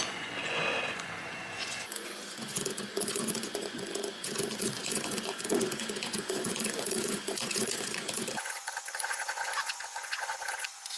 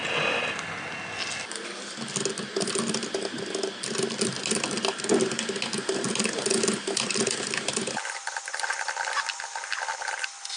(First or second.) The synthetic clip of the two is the first